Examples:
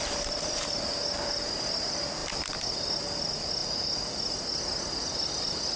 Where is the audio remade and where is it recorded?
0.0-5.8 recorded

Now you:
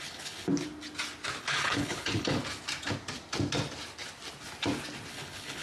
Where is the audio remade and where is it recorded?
0.0-0.5 remade; 0.5-1.4 recorded; 1.4-2.4 remade; 2.4-5.1 recorded; 5.1-5.6 remade

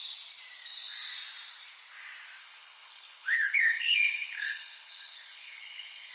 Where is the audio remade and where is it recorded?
0.0-2.4 recorded; 2.4-6.1 remade

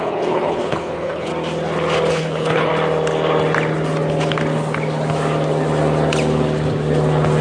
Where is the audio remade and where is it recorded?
0.0-1.3 remade; 1.3-2.1 recorded; 2.1-2.7 remade; 2.7-7.4 recorded